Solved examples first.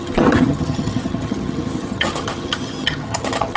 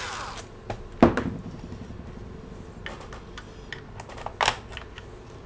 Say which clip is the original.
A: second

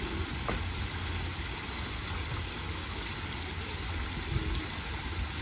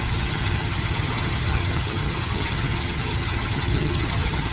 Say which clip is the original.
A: first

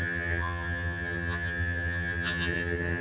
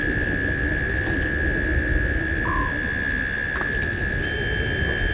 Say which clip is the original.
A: second